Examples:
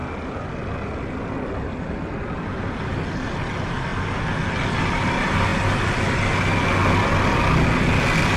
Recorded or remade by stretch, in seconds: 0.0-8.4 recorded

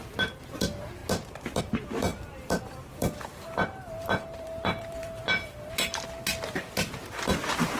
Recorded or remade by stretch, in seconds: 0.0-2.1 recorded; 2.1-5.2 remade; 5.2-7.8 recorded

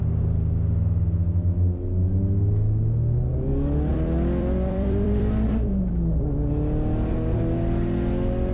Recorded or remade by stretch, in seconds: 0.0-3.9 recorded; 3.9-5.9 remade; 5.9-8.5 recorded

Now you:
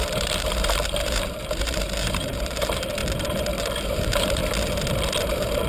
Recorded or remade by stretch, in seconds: 0.0-3.0 remade; 3.0-3.8 recorded; 3.8-4.4 remade; 4.4-5.2 recorded; 5.2-5.7 remade

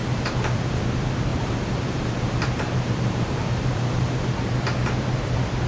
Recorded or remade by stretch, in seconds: 0.0-0.8 remade; 0.8-1.3 recorded; 1.3-4.3 remade; 4.3-5.7 recorded